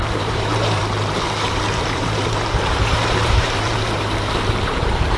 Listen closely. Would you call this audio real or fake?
fake